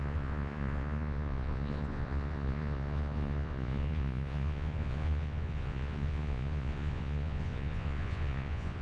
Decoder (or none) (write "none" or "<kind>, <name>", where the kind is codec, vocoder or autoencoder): vocoder, Vocos